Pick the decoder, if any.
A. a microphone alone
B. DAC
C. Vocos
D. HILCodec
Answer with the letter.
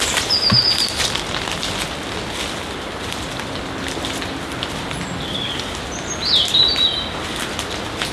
A